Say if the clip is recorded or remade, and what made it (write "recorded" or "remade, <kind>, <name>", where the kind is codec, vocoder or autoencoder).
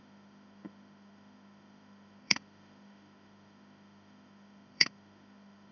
remade, autoencoder, DAC-VAE